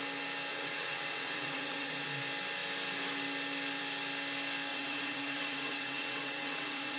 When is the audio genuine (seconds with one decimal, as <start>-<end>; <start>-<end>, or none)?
0.0-0.5; 2.1-4.7